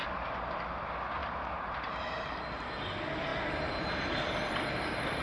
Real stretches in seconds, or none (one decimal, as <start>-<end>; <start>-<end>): 0.5-1.2; 2.4-3.3; 4.5-5.2